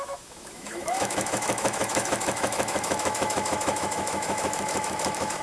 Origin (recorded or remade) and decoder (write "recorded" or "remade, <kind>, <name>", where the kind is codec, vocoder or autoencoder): remade, autoencoder, DAC-VAE